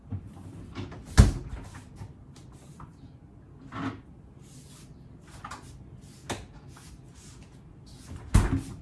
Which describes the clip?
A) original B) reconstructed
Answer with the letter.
A